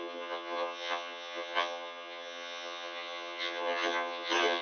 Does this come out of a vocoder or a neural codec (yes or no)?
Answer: yes